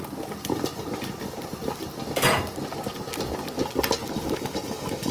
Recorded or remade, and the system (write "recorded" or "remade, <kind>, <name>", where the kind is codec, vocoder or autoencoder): recorded